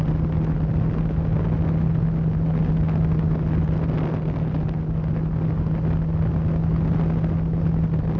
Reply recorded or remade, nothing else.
recorded